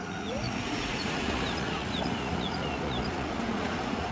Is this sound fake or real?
fake